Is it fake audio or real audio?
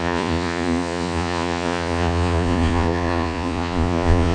fake